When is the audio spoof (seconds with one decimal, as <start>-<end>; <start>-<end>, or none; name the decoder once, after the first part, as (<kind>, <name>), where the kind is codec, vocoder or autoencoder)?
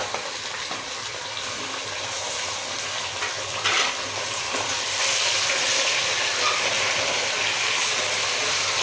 none